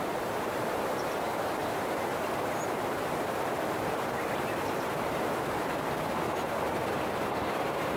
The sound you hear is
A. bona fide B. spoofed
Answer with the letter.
B